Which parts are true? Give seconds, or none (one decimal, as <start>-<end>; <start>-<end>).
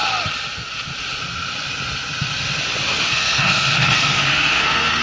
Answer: 0.0-3.0